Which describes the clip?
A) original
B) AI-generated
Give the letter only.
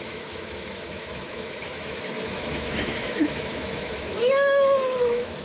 B